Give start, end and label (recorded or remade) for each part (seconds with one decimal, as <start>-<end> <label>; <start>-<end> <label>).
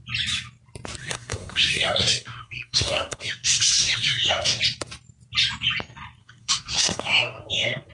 0.0-1.0 recorded; 1.0-4.6 remade; 4.6-6.2 recorded; 6.2-7.9 remade